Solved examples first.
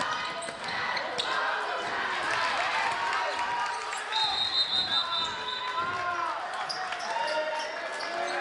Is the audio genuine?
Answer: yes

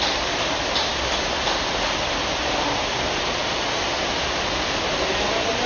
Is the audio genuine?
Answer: yes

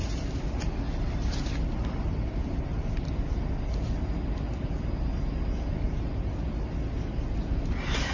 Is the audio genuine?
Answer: yes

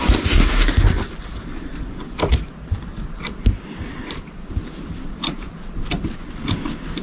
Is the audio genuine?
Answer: yes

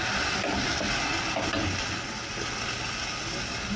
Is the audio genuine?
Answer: yes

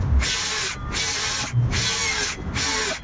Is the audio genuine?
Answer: yes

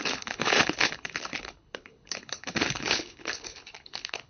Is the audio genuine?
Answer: no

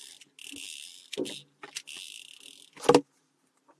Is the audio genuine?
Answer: yes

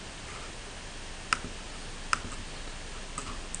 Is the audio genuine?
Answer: yes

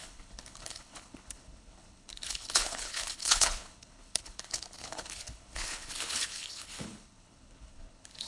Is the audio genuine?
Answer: no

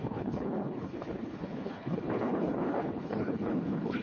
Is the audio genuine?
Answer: no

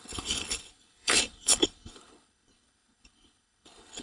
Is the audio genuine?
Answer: no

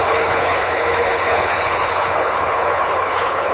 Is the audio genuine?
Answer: no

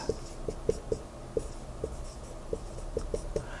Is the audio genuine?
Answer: yes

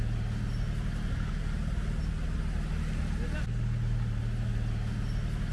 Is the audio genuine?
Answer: yes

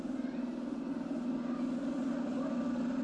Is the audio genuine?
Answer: yes